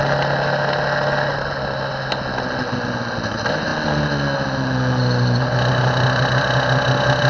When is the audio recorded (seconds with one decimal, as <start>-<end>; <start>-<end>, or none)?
0.0-7.3